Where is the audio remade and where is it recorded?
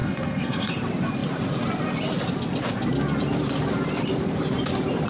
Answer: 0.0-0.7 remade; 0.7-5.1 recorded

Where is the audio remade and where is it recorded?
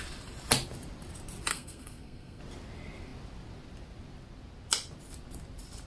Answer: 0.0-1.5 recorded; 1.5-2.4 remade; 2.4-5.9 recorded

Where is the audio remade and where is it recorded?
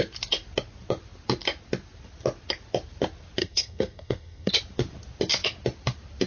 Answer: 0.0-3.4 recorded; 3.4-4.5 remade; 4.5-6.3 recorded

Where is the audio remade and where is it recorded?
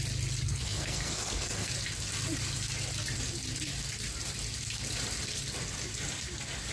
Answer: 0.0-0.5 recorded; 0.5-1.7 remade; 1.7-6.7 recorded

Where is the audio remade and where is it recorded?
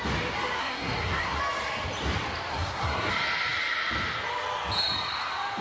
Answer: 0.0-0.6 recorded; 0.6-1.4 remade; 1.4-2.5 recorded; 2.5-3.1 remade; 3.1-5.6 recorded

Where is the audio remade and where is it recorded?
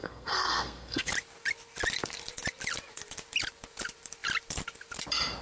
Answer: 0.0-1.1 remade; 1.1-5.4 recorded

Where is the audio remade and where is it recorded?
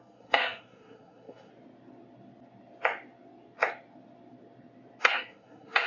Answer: 0.0-1.5 remade; 1.5-5.0 recorded; 5.0-5.9 remade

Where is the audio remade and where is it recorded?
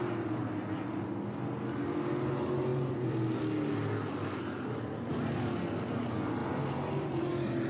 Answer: 0.0-7.7 recorded